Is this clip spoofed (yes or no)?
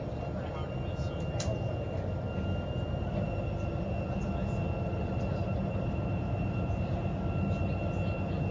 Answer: no